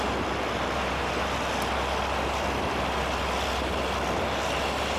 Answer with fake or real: real